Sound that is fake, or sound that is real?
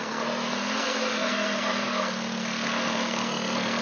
fake